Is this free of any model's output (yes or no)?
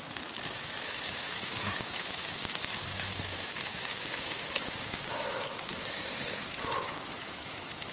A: no